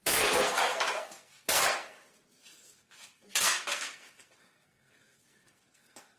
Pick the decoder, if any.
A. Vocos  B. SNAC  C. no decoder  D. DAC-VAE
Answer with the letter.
B